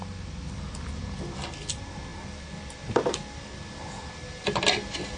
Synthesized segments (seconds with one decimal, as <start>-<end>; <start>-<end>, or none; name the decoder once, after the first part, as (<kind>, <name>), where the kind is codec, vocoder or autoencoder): none